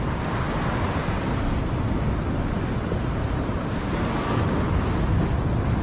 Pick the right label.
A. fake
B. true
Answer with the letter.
B